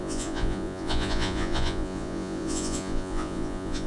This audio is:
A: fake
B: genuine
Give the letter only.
A